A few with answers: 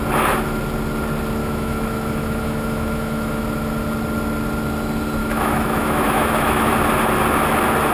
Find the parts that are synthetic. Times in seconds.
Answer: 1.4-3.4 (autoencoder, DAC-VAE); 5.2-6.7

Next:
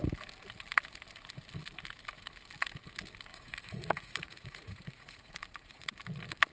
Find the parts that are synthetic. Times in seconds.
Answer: 3.3-5.9 (vocoder, Vocos)

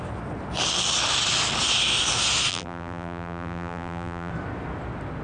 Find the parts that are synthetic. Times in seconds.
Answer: 2.5-4.3 (vocoder, BigVGAN v2)